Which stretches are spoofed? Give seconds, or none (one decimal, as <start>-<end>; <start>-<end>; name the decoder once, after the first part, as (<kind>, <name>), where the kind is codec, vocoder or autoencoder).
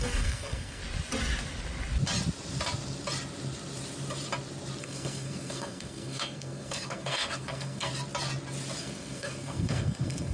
0.0-0.8 (codec, SNAC); 4.8-7.9; 8.8-10.3